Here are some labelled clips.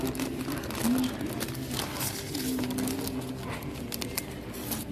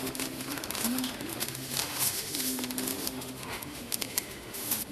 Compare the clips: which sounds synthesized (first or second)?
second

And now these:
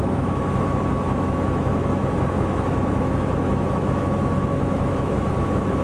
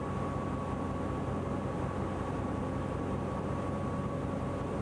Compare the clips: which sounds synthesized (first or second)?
first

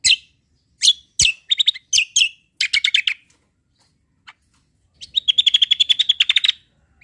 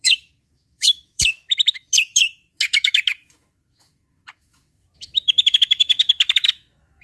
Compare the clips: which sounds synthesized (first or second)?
second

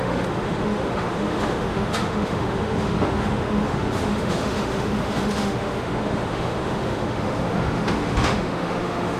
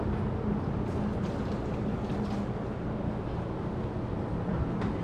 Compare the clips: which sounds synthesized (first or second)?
first